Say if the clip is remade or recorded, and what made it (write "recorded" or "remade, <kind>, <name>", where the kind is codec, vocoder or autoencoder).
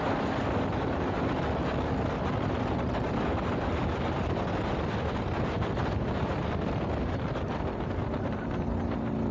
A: recorded